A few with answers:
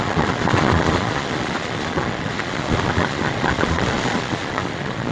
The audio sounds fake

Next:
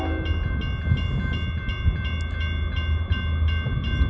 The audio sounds real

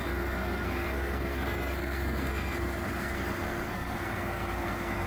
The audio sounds fake